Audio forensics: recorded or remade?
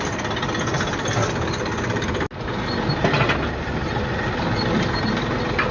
recorded